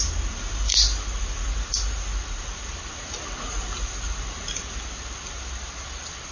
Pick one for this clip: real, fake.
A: real